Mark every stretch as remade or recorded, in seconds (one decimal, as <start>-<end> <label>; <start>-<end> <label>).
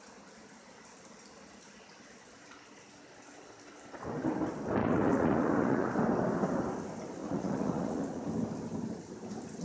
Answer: 0.0-4.8 recorded; 4.8-5.9 remade; 5.9-7.2 recorded; 7.2-8.2 remade; 8.2-9.6 recorded